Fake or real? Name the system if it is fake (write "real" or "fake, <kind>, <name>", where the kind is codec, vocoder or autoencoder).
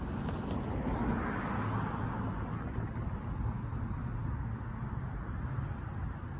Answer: real